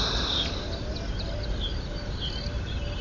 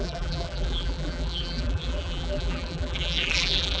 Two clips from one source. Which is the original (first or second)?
first